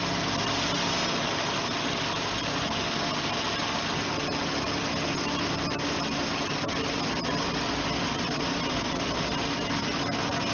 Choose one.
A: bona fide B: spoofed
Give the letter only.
A